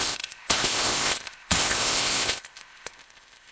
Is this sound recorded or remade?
remade